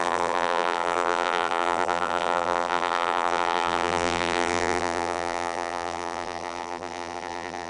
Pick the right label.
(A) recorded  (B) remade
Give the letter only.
B